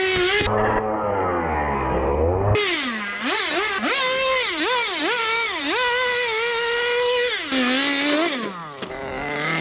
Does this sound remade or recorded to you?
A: recorded